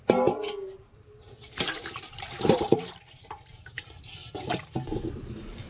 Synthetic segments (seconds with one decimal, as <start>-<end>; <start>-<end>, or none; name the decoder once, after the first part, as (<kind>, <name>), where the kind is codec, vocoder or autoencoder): 0.0-4.2 (vocoder, BigVGAN v2)